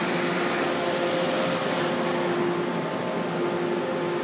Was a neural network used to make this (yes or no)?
no